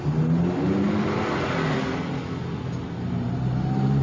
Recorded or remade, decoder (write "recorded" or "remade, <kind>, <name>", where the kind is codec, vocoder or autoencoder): recorded